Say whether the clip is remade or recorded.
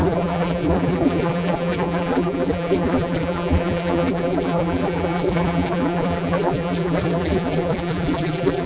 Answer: remade